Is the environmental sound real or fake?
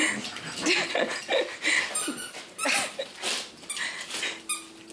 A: real